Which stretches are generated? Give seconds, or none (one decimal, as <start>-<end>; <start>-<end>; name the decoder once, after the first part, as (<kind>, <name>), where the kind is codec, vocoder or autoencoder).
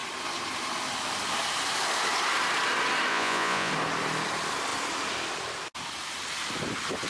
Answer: 3.1-3.7 (vocoder, Vocos)